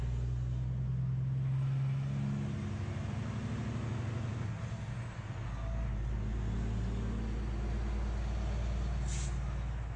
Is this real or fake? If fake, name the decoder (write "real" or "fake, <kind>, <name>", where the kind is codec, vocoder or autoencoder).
real